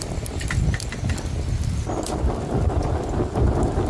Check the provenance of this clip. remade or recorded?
recorded